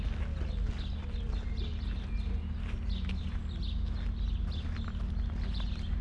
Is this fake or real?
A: real